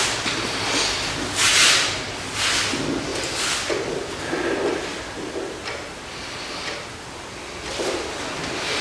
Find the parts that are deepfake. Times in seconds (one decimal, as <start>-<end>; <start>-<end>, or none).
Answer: none